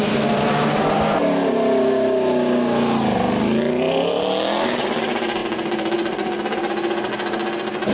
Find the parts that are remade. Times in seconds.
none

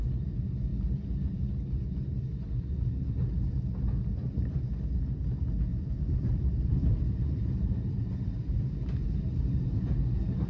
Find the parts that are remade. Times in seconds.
5.7-10.0 (vocoder, BigVGAN v2)

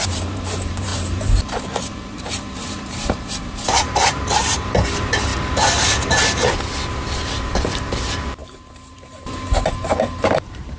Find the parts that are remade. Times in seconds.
0.0-5.3 (vocoder, BigVGAN v2); 6.9-10.8

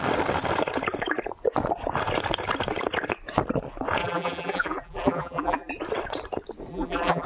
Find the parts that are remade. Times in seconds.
4.0-5.7 (vocoder, BigVGAN v2); 6.7-7.3

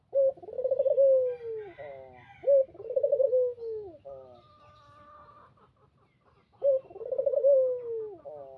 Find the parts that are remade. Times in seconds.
none

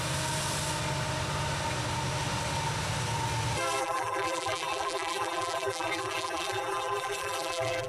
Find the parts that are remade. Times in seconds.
3.8-7.9 (vocoder, BigVGAN v2)